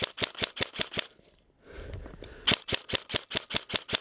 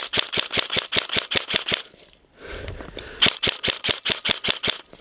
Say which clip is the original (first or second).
first